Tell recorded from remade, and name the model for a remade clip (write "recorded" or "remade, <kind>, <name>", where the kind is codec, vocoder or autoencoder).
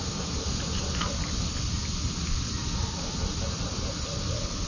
recorded